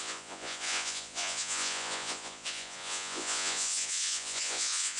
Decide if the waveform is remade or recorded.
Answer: remade